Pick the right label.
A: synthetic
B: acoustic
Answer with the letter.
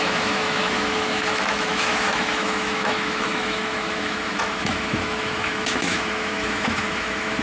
A